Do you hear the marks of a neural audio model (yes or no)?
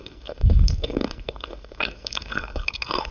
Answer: yes